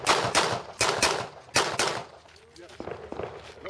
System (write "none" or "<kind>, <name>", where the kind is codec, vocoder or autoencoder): none